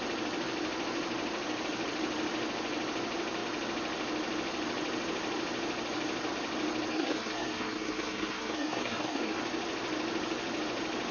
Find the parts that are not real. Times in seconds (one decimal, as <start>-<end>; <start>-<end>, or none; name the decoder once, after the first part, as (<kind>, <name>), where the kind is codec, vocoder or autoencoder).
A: 6.9-9.4 (codec, SNAC)